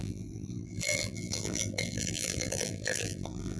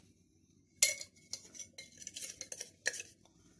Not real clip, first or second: first